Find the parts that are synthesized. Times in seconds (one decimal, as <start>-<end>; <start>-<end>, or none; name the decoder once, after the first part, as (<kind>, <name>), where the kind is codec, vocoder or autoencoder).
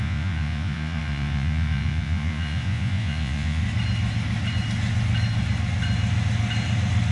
0.0-3.6 (vocoder, Vocos)